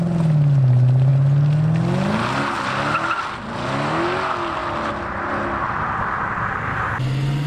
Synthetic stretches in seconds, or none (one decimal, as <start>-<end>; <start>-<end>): none